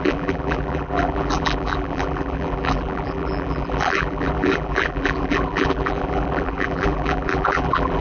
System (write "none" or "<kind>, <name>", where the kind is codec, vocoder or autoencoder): vocoder, BigVGAN v2